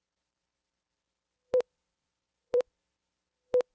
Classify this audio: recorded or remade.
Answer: remade